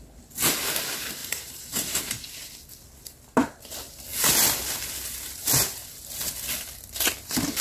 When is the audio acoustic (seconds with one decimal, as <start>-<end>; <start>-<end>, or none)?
0.0-1.2; 2.0-7.6